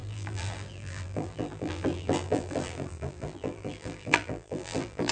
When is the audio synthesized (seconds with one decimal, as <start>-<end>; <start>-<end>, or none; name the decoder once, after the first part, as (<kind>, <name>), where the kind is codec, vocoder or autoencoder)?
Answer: 0.0-5.1 (vocoder, BigVGAN v2)